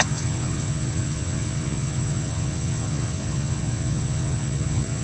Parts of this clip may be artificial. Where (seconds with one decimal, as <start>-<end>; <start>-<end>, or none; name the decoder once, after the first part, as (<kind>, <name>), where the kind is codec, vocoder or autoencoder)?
0.0-5.0 (vocoder, WaveNeXt)